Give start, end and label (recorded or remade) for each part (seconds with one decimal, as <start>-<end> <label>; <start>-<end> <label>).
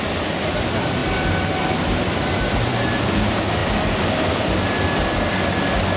0.0-3.6 recorded; 3.6-5.6 remade; 5.6-6.0 recorded